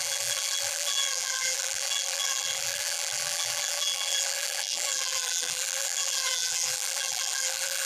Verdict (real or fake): fake